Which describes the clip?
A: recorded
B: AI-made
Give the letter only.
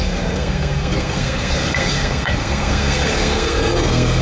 B